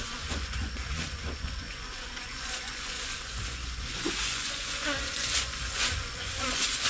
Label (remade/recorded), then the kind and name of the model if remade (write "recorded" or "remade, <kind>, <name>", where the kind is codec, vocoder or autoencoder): remade, vocoder, Vocos